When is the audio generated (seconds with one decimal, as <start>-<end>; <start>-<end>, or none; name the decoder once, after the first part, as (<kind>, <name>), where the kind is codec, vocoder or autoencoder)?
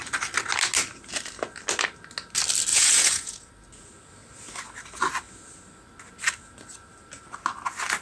2.7-3.5 (vocoder, Vocos)